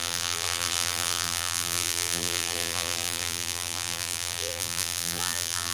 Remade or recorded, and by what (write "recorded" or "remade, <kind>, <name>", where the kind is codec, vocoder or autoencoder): remade, vocoder, BigVGAN v2